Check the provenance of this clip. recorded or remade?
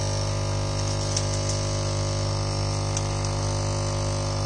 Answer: recorded